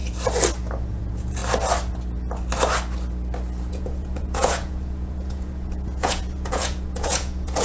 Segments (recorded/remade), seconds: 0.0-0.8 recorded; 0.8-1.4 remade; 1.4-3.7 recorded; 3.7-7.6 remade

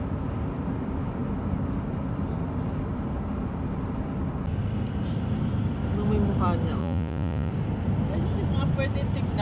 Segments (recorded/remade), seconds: 0.0-6.8 recorded; 6.8-7.5 remade; 7.5-9.4 recorded

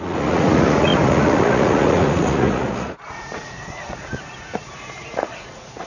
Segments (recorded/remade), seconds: 0.0-5.9 remade

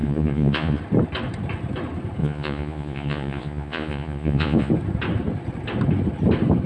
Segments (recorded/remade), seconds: 0.0-0.8 remade; 0.8-2.2 recorded; 2.2-4.7 remade; 4.7-6.7 recorded

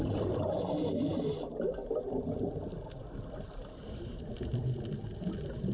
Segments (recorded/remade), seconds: 0.0-5.7 recorded